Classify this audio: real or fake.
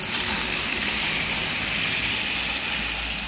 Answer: real